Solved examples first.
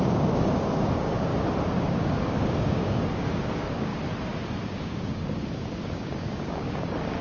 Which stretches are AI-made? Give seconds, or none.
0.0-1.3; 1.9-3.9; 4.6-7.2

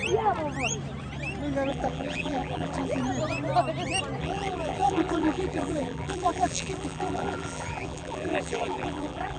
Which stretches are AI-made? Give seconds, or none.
1.7-3.0; 4.2-9.4

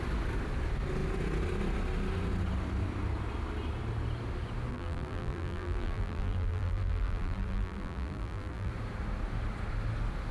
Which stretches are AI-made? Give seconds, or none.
4.7-8.7

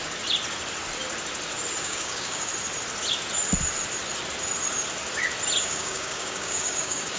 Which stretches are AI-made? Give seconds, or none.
1.8-2.5; 5.6-7.2